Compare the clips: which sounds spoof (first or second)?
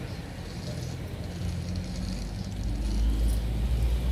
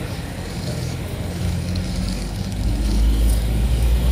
second